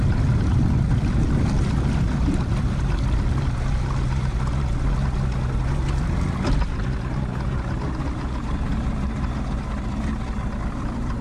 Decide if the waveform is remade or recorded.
recorded